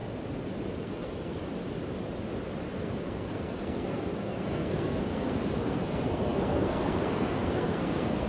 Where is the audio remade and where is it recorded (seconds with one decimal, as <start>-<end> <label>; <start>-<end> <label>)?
0.0-0.8 recorded; 0.8-1.4 remade; 1.4-2.8 recorded; 2.8-8.3 remade